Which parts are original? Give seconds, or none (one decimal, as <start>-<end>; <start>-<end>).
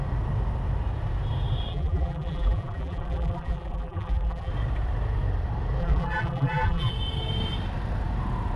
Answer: 0.0-1.7; 4.5-5.8; 6.9-8.6